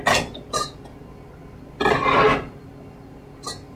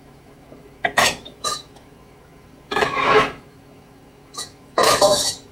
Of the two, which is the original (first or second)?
first